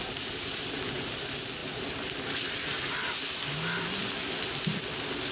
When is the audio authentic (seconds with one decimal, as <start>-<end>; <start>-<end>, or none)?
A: 0.0-5.3